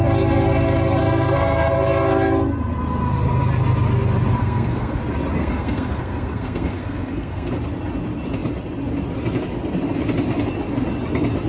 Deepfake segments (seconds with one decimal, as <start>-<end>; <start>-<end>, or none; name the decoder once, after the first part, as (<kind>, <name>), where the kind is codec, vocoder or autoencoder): 1.0-1.7 (codec, SNAC); 4.4-5.0; 5.4-7.5